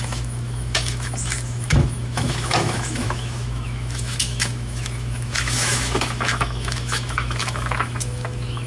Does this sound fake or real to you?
fake